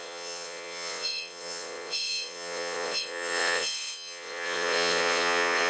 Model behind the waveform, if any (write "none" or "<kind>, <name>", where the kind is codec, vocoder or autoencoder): vocoder, WaveNeXt